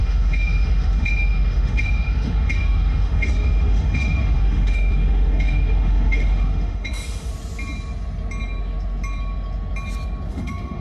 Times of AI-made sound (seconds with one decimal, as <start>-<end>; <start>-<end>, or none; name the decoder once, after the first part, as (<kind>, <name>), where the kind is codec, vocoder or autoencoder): 0.0-7.3 (autoencoder, DAC-VAE); 10.3-10.8